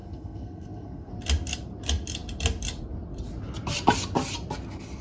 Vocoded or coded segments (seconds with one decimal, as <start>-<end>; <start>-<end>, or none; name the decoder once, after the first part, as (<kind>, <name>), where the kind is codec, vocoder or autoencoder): 0.0-1.1 (codec, SNAC)